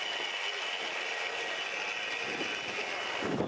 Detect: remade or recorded recorded